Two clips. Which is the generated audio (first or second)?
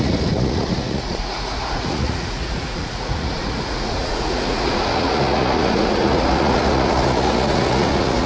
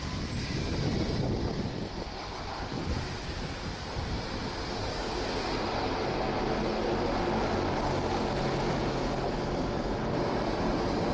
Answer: first